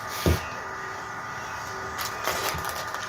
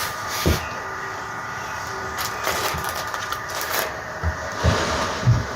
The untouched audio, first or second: first